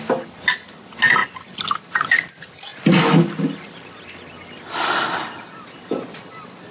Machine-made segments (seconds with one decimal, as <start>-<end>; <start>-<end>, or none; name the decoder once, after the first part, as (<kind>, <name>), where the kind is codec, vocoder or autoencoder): none